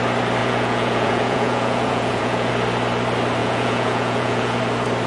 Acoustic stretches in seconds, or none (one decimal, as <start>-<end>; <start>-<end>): 0.0-0.4; 2.5-3.4; 4.6-5.1